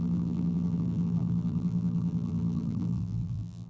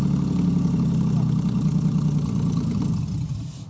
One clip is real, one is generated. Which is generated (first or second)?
first